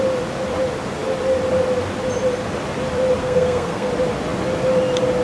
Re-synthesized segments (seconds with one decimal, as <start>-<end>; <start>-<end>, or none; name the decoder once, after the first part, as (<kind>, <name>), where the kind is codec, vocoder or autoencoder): 3.2-3.9 (codec, SNAC)